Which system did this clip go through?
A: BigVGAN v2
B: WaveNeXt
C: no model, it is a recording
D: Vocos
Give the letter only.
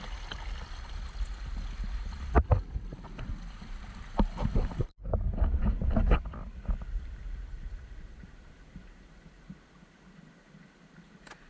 C